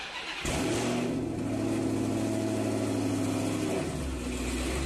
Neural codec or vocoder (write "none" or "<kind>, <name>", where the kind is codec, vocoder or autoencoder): none